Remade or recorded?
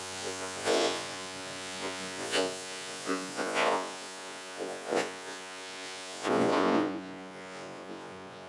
remade